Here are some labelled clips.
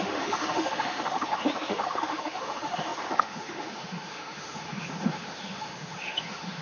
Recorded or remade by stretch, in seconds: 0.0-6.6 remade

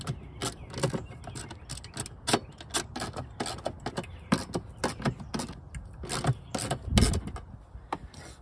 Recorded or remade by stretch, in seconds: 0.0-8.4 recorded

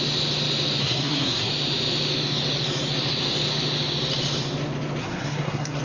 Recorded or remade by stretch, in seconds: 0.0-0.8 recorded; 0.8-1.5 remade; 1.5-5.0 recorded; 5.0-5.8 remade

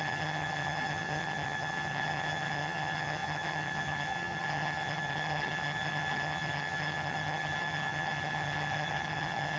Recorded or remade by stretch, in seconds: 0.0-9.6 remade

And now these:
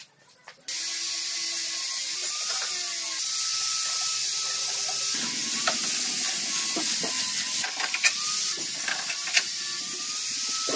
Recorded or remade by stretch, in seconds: 0.0-10.8 recorded

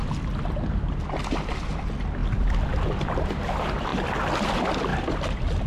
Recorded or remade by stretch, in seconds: 0.0-4.9 recorded; 4.9-5.7 remade

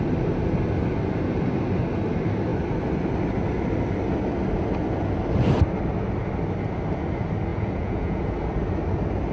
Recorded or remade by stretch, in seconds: 0.0-7.5 recorded; 7.5-8.2 remade; 8.2-9.3 recorded